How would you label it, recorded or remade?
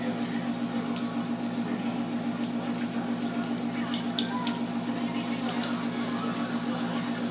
recorded